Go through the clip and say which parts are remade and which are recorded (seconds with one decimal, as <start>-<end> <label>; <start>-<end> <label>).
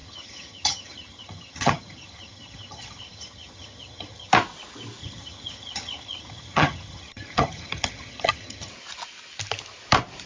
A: 0.0-4.3 remade; 4.3-5.0 recorded; 5.0-8.7 remade; 8.7-10.3 recorded